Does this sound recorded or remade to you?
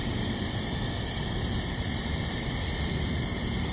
recorded